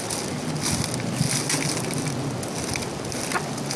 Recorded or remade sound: recorded